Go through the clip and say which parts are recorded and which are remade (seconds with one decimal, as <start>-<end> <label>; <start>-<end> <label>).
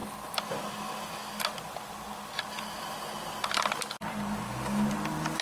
0.0-5.4 recorded